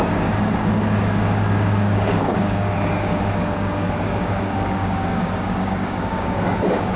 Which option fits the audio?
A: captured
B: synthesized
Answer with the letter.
B